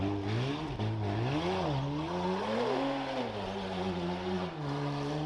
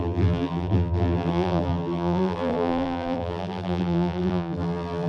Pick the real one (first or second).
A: first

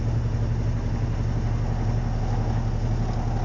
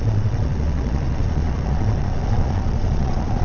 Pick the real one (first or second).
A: first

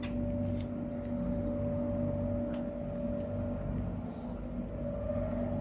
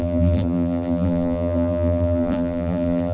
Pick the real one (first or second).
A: first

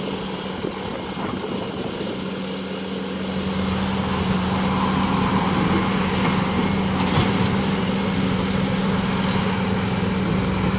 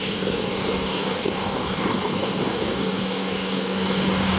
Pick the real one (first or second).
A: first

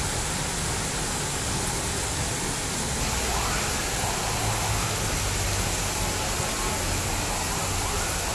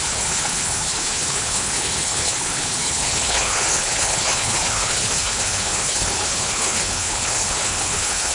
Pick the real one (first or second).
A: first